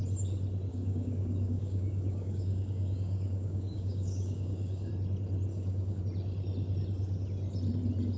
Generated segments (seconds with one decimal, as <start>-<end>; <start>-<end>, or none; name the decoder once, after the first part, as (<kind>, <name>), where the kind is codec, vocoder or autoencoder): 0.7-4.9 (codec, DAC); 5.5-6.0